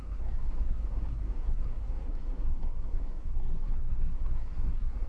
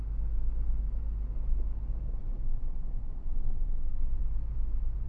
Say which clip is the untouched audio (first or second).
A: second